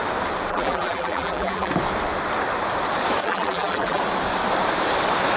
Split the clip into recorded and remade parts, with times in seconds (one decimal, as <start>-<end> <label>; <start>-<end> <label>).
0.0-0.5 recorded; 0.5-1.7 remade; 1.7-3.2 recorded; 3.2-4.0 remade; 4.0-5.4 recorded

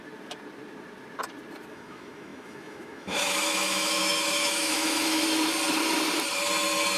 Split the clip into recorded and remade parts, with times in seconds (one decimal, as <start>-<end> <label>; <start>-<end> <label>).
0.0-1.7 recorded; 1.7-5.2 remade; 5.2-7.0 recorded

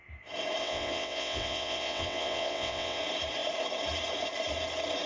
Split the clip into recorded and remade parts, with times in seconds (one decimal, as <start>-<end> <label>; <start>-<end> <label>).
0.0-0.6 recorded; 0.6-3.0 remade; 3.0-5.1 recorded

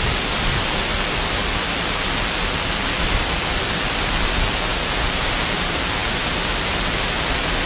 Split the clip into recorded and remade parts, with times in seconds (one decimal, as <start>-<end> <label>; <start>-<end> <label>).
0.0-1.4 remade; 1.4-3.3 recorded; 3.3-7.7 remade

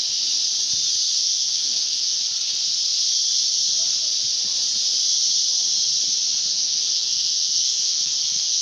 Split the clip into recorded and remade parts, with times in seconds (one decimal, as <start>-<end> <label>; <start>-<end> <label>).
0.0-1.2 recorded; 1.2-2.2 remade; 2.2-6.5 recorded; 6.5-8.6 remade